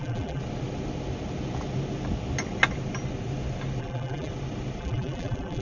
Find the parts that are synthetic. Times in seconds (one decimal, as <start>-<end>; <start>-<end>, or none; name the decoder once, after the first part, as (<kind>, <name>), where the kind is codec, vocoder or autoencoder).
0.0-0.4 (vocoder, BigVGAN v2); 3.8-4.3; 4.8-5.6